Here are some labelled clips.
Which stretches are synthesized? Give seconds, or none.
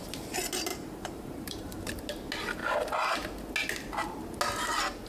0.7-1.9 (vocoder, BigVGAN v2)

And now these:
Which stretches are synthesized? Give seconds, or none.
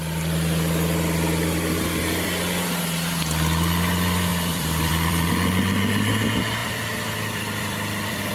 4.3-5.3 (vocoder, BigVGAN v2); 6.6-8.3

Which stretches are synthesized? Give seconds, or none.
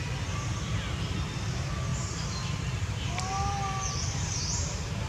1.9-3.1 (vocoder, BigVGAN v2); 4.0-5.1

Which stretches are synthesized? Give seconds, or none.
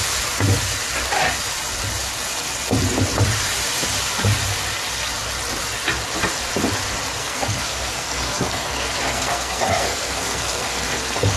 7.2-11.4 (codec, SNAC)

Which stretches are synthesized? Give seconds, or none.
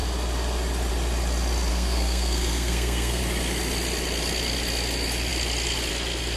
1.7-3.2 (codec, SNAC)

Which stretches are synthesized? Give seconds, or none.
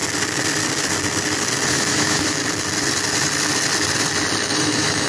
1.7-2.4 (autoencoder, DAC-VAE); 4.6-5.1